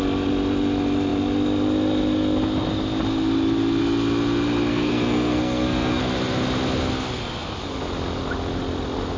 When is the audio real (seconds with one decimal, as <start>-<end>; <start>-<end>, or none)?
0.0-4.7; 6.0-9.2